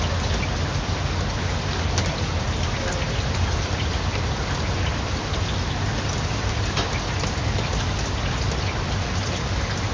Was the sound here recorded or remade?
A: recorded